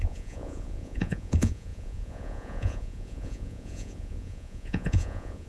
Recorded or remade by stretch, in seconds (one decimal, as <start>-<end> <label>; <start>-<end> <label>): 0.0-5.5 remade